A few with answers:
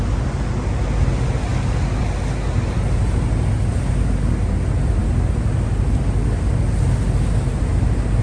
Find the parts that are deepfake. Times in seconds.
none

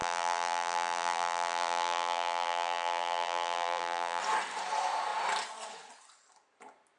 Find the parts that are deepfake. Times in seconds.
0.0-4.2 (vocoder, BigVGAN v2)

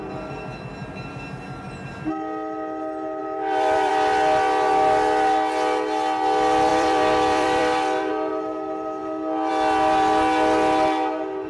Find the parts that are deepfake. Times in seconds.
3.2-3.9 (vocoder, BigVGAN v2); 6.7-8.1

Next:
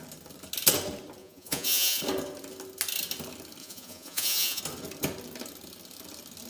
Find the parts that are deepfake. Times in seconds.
1.2-2.0 (vocoder, Vocos); 3.6-4.6

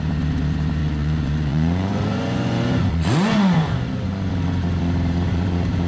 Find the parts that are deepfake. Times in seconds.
0.8-4.3 (vocoder, Vocos); 5.3-5.9

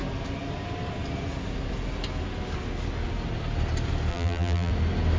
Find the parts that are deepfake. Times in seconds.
4.1-4.7 (vocoder, BigVGAN v2)